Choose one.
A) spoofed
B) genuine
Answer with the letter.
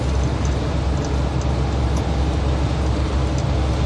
B